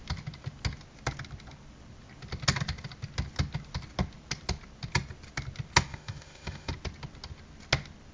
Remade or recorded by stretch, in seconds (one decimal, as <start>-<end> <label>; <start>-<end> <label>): 0.0-5.9 recorded; 5.9-6.7 remade; 6.7-8.1 recorded

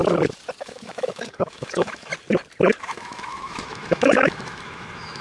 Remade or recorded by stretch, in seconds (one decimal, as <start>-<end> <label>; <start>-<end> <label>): 0.0-0.6 recorded; 0.6-2.1 remade; 2.1-2.8 recorded; 2.8-5.2 remade

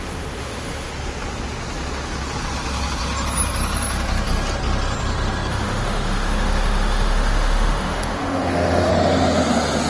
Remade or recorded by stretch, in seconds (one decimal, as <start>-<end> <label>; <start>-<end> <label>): 0.0-0.9 remade; 0.9-5.5 recorded; 5.5-8.9 remade; 8.9-9.9 recorded

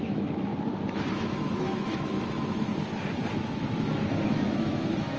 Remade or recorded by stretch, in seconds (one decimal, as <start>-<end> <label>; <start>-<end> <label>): 0.0-0.5 remade; 0.5-1.1 recorded; 1.1-2.7 remade; 2.7-3.3 recorded; 3.3-5.2 remade

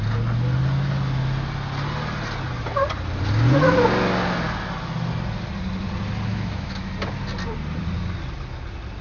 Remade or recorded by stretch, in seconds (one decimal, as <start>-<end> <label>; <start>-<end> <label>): 0.0-6.3 recorded; 6.3-6.9 remade; 6.9-9.0 recorded

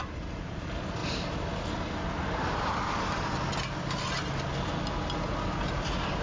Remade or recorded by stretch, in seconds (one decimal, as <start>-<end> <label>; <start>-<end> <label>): 0.0-6.2 recorded